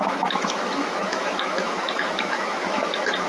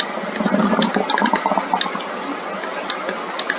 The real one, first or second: second